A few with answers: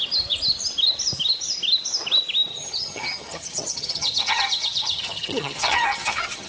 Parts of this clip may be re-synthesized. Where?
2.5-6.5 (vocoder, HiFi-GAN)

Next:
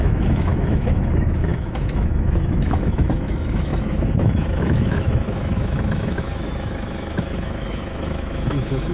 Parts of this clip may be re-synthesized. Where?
0.0-8.9 (autoencoder, DAC-VAE)

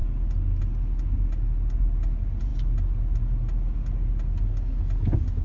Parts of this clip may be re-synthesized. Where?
none

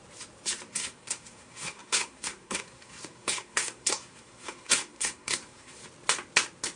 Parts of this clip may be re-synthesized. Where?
0.7-5.8 (codec, SNAC)

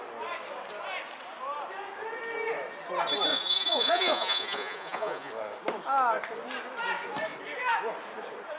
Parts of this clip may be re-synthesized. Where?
3.3-5.3 (vocoder, Vocos)

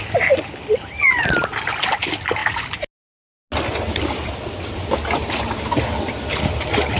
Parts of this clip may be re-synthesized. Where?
none

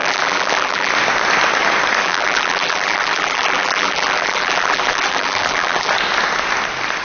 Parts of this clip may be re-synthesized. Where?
0.0-0.9 (vocoder, BigVGAN v2); 2.0-5.9

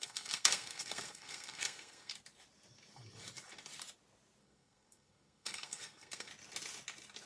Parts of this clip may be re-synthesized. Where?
0.0-2.1 (codec, SNAC); 4.4-6.3